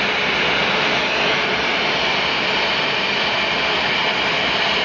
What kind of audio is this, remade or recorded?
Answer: recorded